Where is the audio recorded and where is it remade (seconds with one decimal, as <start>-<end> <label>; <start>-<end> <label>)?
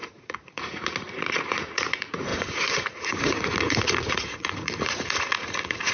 0.0-5.9 remade